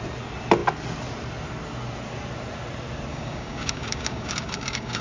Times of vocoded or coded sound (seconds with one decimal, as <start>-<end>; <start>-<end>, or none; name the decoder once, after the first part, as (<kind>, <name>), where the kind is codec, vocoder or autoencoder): 3.1-5.0 (codec, DAC)